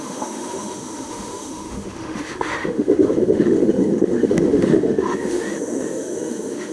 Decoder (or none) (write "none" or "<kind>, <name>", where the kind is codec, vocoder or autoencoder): autoencoder, DAC-VAE